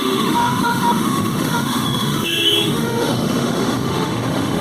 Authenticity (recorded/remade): remade